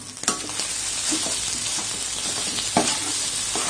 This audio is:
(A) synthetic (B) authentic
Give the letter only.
B